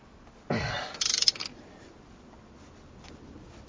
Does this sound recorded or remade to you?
recorded